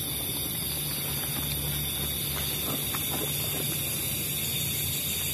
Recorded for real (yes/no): yes